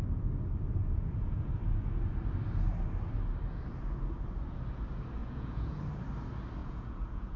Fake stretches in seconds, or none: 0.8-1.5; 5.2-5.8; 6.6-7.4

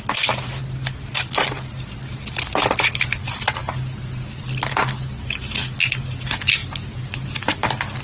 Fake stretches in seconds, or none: none

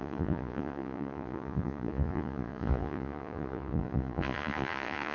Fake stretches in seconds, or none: 0.0-5.1

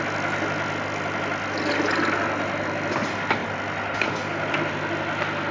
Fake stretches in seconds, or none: none

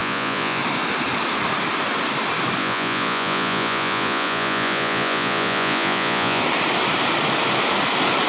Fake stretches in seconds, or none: 0.0-0.6; 2.6-6.4

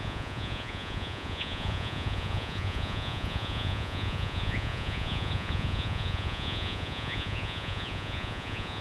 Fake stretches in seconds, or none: 0.0-8.8

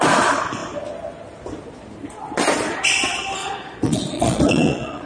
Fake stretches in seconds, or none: 3.4-5.1